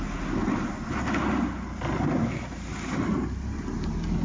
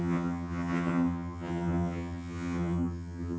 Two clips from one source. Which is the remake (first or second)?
second